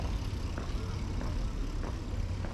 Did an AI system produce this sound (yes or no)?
no